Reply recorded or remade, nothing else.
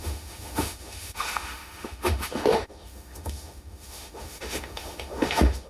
remade